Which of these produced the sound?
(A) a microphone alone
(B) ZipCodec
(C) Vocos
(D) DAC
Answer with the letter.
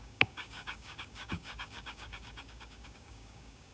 D